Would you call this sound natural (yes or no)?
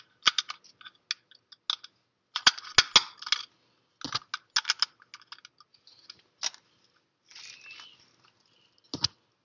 yes